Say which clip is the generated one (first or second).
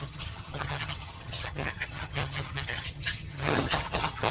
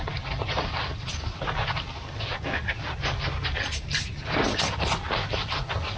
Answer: first